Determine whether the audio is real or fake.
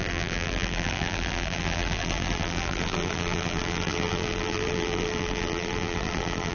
fake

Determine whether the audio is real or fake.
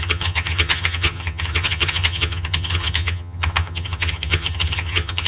fake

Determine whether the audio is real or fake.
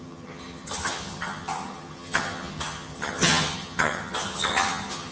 fake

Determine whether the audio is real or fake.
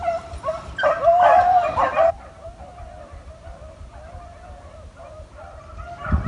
real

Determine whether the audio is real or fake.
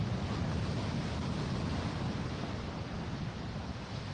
real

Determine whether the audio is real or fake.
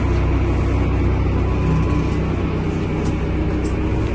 real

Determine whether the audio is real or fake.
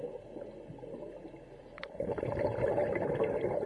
real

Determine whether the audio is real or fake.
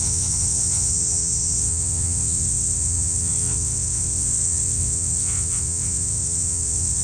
fake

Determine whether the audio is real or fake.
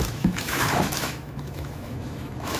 fake